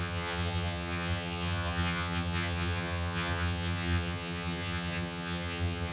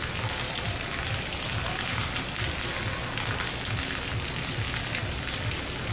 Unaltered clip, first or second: second